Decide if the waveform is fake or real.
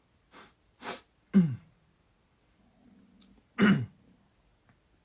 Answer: real